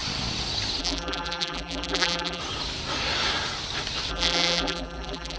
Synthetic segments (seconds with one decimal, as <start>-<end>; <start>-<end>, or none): 0.8-2.4; 4.1-5.4